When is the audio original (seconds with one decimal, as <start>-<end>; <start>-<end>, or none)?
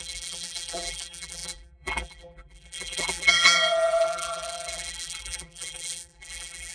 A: none